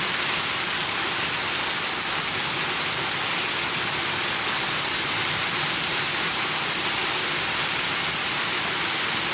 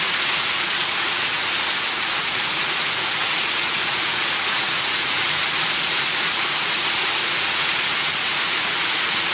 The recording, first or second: first